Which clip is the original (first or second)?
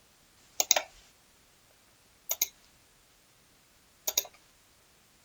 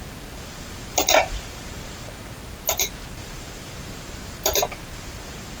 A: first